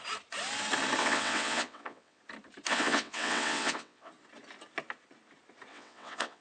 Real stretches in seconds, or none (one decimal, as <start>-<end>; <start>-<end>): 0.0-1.0; 2.2-2.7; 4.1-5.7

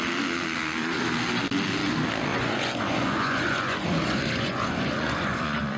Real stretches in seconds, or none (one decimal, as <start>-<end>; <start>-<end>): 0.0-2.3

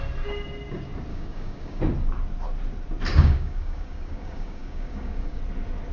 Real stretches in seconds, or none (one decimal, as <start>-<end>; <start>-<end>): 0.0-1.1; 1.8-3.1; 5.4-5.9

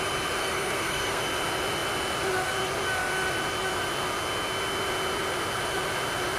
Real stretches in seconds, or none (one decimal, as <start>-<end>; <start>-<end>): 0.0-0.4; 1.2-6.4

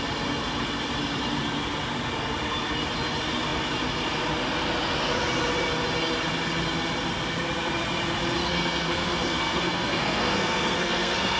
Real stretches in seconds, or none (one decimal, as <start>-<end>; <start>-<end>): 0.0-8.4

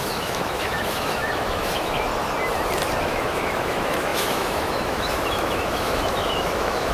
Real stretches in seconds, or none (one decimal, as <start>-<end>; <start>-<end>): 2.1-3.0